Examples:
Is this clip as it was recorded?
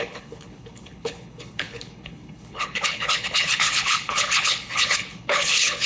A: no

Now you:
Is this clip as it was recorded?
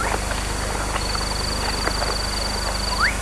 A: yes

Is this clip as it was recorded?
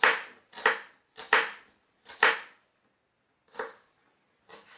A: yes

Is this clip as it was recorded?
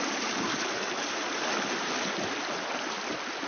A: yes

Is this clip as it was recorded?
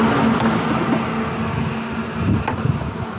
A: yes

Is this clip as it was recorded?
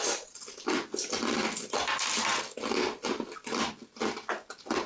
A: yes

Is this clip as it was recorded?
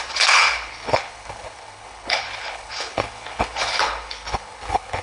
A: no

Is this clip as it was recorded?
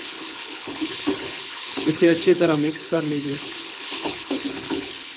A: no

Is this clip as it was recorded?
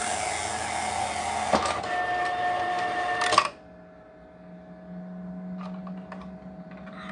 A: yes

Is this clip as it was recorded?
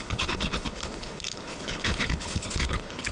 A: no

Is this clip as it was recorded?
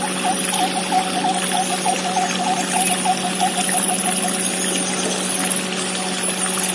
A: yes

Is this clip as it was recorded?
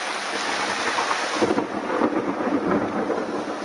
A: yes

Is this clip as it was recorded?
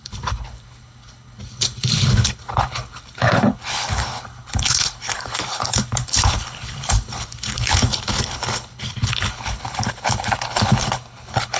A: no